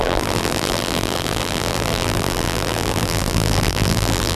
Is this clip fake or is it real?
fake